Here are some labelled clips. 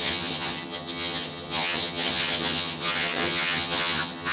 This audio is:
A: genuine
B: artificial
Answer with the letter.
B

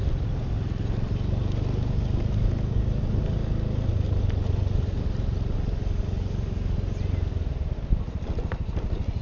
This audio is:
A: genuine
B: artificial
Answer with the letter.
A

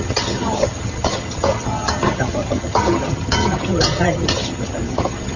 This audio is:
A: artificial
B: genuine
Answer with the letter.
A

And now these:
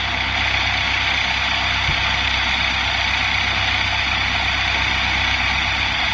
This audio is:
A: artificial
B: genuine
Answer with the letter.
B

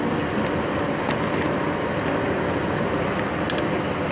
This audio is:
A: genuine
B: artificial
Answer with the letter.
A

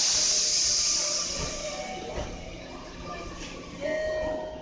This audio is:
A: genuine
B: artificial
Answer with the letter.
A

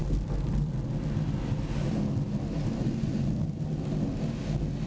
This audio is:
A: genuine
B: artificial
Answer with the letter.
A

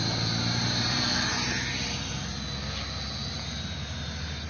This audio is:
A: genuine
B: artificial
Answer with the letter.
A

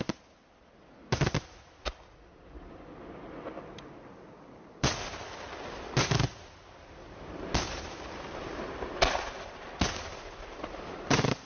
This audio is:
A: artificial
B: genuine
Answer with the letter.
B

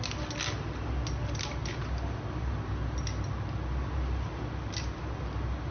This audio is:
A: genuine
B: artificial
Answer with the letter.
A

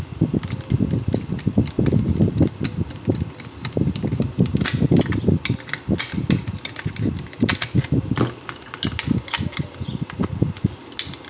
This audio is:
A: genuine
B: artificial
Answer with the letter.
A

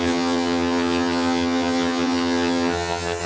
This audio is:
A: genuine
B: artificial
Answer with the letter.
B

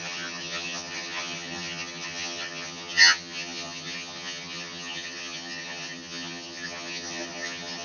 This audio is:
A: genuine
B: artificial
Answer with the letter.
B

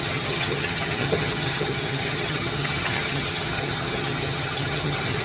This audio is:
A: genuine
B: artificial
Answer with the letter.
B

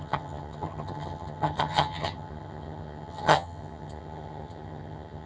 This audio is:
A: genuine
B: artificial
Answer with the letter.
B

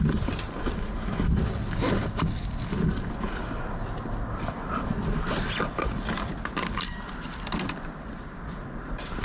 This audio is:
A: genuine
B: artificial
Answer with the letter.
A